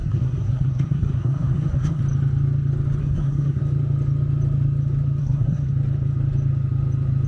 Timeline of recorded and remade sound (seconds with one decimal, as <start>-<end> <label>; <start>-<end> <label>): 0.0-2.0 remade; 2.0-3.0 recorded; 3.0-3.6 remade; 3.6-5.2 recorded; 5.2-5.7 remade; 5.7-7.3 recorded